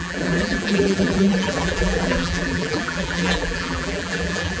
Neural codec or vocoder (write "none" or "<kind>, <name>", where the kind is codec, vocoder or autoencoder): vocoder, BigVGAN v2